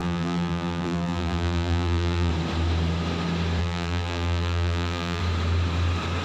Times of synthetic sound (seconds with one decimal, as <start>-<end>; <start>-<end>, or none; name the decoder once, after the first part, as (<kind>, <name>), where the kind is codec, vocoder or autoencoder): 0.0-2.3 (vocoder, BigVGAN v2); 3.6-5.2